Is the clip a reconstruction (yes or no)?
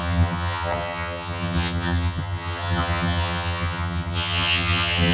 yes